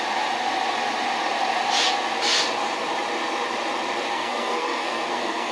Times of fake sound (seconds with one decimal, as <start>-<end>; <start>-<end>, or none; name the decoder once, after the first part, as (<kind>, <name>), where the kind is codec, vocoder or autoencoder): 4.1-5.5 (codec, SNAC)